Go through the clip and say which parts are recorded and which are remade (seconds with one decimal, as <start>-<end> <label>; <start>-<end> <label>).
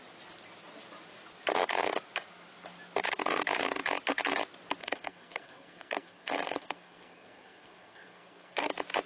0.0-4.8 recorded; 4.8-8.7 remade; 8.7-9.1 recorded